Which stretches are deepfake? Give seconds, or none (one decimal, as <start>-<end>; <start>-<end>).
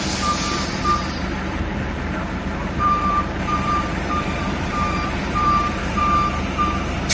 1.7-6.0